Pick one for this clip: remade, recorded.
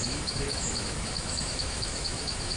remade